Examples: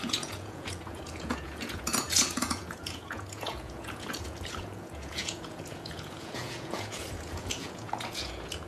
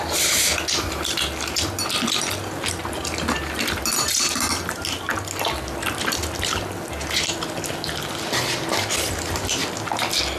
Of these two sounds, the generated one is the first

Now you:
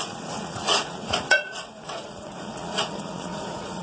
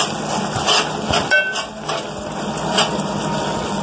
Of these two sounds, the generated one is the first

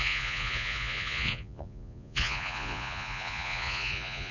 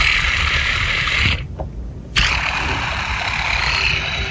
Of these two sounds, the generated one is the first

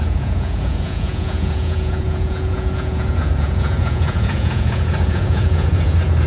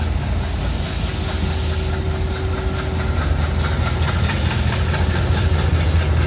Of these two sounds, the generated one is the first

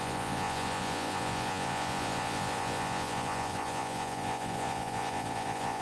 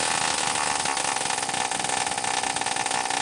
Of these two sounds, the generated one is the first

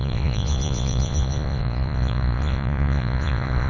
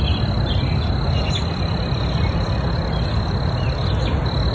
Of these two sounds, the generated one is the first